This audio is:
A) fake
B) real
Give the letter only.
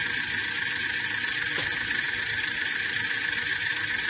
B